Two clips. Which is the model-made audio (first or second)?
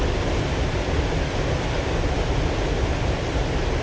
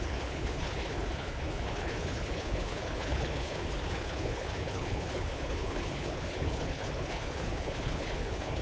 second